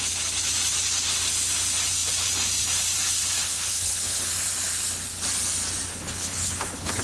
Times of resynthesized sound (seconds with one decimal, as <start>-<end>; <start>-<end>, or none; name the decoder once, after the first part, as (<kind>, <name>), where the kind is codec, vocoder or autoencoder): 3.4-4.3 (codec, HILCodec); 5.9-7.0